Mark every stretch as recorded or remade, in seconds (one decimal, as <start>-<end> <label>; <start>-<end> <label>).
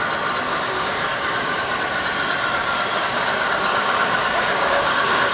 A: 0.0-0.5 recorded; 0.5-1.7 remade; 1.7-2.6 recorded; 2.6-5.3 remade